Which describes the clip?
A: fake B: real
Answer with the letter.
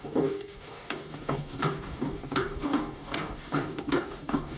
A